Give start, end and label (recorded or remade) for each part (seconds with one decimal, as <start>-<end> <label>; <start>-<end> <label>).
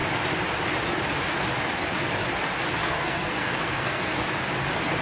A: 0.0-2.8 recorded; 2.8-4.2 remade; 4.2-5.0 recorded